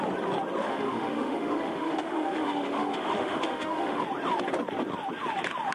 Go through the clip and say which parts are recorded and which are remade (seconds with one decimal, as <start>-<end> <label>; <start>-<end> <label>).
0.0-0.6 recorded; 0.6-4.0 remade; 4.0-5.7 recorded